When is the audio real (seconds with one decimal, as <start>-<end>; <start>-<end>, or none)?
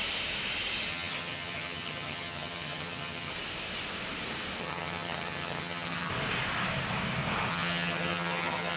0.0-0.9; 3.3-4.6; 6.1-7.5